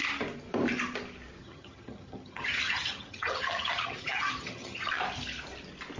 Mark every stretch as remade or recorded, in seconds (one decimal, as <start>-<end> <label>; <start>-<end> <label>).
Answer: 0.0-1.4 recorded; 1.4-5.0 remade; 5.0-6.0 recorded